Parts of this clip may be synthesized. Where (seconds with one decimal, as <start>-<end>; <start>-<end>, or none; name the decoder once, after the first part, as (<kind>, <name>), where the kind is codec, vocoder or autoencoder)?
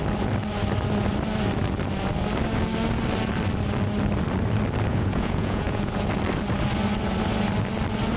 4.9-5.9 (vocoder, Vocos)